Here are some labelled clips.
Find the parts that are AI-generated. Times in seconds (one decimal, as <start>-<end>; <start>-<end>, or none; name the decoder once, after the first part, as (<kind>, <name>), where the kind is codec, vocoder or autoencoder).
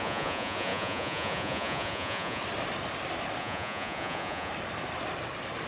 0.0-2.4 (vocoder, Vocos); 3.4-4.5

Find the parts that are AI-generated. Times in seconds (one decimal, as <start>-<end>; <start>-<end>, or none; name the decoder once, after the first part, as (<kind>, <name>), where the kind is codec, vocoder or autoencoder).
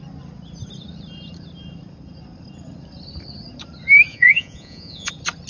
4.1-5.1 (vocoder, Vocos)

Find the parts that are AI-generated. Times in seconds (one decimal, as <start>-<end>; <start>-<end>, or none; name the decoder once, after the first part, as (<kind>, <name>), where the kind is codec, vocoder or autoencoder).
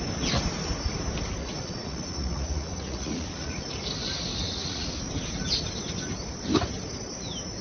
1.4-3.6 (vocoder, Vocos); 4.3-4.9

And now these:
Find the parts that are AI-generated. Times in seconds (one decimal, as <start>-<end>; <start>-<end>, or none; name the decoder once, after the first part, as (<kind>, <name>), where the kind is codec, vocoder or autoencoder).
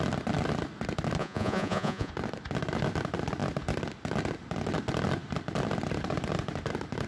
1.2-2.1 (vocoder, Vocos)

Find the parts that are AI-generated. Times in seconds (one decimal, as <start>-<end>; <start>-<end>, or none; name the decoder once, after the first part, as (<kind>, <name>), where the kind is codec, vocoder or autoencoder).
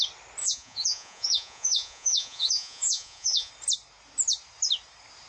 0.4-3.5 (vocoder, Vocos)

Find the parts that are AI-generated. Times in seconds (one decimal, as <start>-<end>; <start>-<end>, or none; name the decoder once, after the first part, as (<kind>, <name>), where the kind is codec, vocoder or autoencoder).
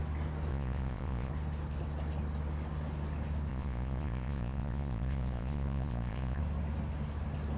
0.5-1.3 (vocoder, Vocos); 3.5-6.4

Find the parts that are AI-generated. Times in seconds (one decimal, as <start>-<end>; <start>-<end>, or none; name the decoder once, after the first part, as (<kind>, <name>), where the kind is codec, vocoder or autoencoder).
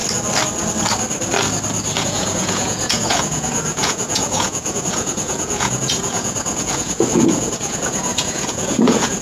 2.0-9.2 (vocoder, Vocos)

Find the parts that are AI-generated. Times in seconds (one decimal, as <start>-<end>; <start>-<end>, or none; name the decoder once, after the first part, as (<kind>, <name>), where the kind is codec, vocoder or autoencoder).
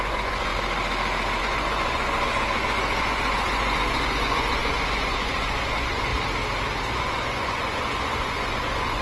0.0-0.5 (vocoder, Vocos); 1.4-6.1; 6.9-9.0